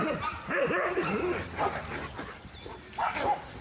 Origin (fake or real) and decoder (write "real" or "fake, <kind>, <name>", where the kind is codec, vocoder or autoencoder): real